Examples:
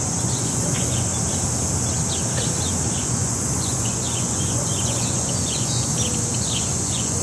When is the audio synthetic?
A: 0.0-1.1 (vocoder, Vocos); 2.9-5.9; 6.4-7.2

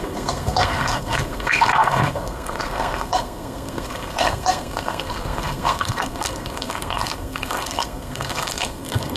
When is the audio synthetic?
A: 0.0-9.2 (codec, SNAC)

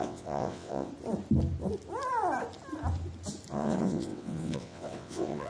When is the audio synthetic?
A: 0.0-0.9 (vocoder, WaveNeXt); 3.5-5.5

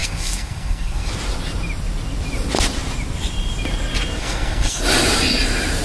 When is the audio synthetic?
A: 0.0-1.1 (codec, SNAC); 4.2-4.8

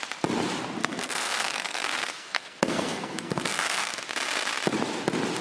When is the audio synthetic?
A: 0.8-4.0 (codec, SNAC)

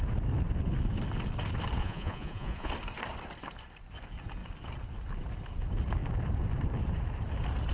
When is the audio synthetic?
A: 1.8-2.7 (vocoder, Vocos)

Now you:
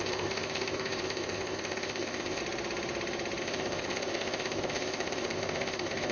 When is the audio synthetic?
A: 0.0-2.4 (codec, ZipCodec); 3.4-6.1